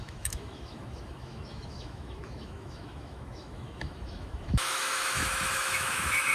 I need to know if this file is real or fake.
fake